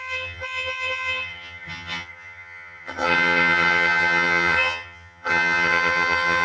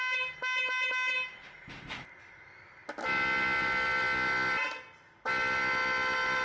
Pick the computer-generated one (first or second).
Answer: first